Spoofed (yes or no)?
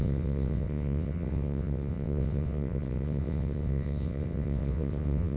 yes